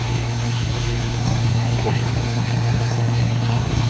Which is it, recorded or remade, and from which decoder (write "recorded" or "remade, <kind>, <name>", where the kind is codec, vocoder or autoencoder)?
remade, codec, SNAC